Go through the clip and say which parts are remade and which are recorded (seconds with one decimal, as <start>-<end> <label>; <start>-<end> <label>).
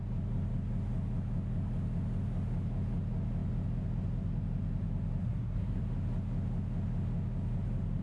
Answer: 0.0-5.2 recorded; 5.2-5.8 remade; 5.8-8.0 recorded